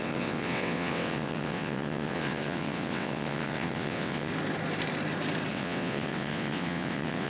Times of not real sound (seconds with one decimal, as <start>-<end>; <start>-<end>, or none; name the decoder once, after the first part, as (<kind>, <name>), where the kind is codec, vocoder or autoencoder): 0.0-4.3 (vocoder, WaveNeXt); 5.5-7.3

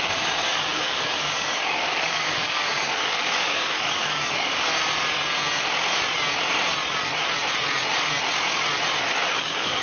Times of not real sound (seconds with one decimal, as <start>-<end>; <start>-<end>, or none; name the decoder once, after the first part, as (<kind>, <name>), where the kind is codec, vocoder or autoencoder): 0.0-4.7 (codec, DAC); 9.0-9.8

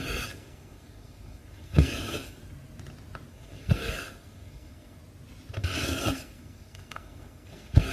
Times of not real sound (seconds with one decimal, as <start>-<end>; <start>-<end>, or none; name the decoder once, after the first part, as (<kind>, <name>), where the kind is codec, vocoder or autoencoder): 0.0-2.4 (codec, SNAC); 3.3-5.0; 5.6-7.9

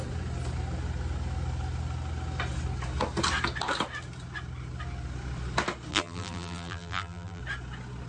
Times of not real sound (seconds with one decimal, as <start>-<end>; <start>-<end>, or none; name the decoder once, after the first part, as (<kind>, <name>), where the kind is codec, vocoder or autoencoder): 5.9-7.4 (vocoder, BigVGAN v2)